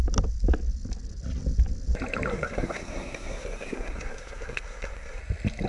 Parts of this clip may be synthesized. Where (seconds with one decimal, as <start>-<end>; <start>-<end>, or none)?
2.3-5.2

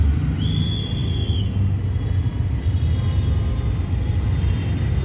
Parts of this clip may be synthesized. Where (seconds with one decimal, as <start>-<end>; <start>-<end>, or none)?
none

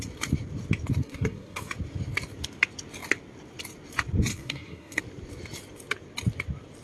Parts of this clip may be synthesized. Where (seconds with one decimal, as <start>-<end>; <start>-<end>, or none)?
1.0-1.7; 4.3-5.0

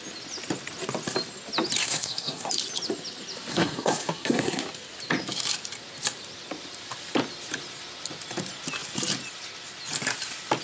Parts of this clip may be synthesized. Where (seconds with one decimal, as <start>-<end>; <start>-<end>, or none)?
1.8-2.5; 3.5-4.6